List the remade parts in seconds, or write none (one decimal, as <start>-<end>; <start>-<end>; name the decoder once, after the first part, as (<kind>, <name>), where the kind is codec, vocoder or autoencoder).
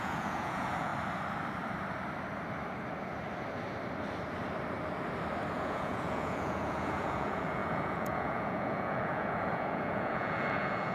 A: 0.0-0.9 (vocoder, Vocos); 5.5-10.9